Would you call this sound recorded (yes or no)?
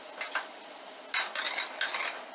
yes